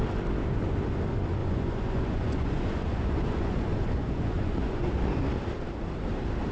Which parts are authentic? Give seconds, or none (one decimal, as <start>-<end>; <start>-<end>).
0.0-1.4; 4.9-6.5